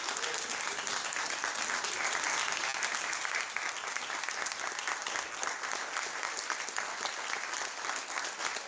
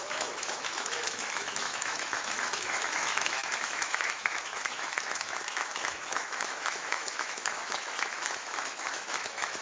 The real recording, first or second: first